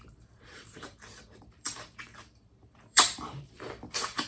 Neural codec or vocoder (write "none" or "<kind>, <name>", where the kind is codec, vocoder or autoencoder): vocoder, BigVGAN v2